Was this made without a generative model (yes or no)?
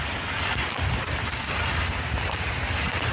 yes